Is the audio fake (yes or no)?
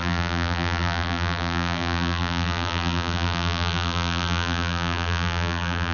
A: yes